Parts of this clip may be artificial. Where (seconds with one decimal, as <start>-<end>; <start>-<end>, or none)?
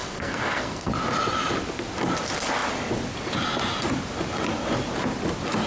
0.0-0.9